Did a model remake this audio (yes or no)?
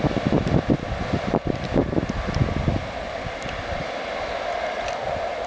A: no